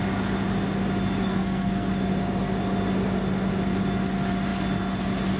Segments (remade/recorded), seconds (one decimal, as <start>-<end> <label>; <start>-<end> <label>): 0.0-1.2 recorded; 1.2-1.9 remade; 1.9-5.4 recorded